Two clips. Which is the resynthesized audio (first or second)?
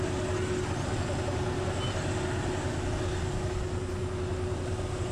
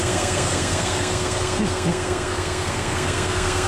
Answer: second